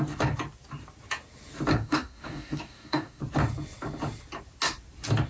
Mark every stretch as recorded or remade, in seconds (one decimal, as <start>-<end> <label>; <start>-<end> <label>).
0.0-1.7 recorded; 1.7-3.2 remade; 3.2-5.3 recorded